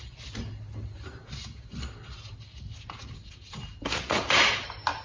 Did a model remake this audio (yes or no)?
no